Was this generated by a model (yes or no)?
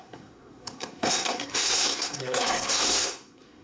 yes